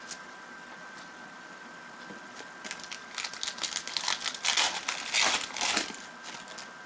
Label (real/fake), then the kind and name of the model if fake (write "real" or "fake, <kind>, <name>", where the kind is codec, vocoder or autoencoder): real